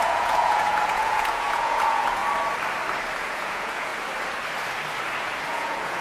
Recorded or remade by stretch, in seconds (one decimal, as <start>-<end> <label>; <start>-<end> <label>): 0.0-2.2 remade; 2.2-3.2 recorded; 3.2-3.9 remade; 3.9-5.5 recorded; 5.5-6.0 remade